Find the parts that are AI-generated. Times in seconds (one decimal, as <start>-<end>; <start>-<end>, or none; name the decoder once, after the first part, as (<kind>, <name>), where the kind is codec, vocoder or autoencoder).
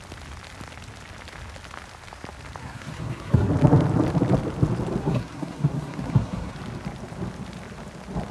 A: 2.6-3.5 (codec, SNAC); 5.0-6.5